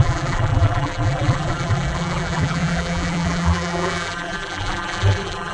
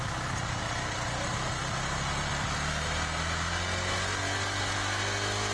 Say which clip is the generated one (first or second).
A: first